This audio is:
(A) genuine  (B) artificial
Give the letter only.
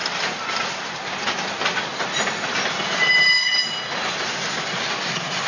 A